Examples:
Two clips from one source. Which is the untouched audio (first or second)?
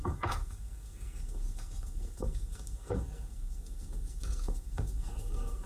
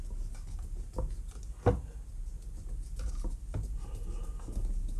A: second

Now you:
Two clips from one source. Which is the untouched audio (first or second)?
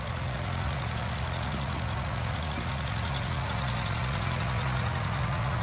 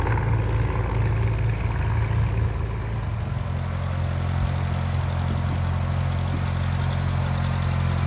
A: second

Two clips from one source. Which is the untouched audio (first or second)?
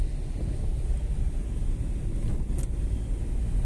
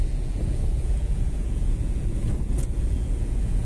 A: first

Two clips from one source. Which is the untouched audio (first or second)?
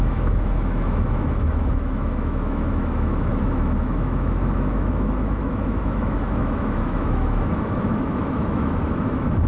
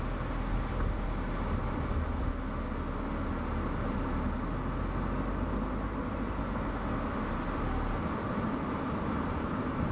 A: second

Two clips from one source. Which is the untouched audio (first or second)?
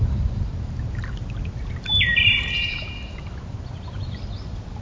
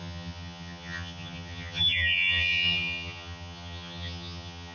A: first